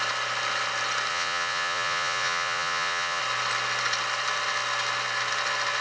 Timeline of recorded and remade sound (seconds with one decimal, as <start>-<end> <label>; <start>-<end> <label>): 0.0-1.1 recorded; 1.1-3.2 remade; 3.2-5.8 recorded